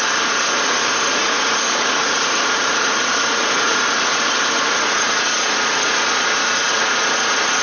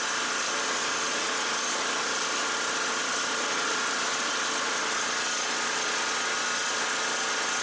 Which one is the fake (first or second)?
first